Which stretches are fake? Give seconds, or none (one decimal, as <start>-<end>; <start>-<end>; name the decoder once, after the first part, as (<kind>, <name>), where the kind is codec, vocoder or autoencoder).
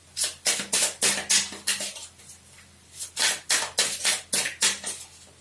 none